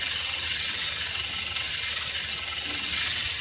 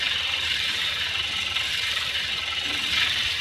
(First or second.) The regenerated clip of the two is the second